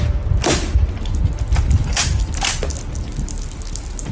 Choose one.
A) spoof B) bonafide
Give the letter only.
B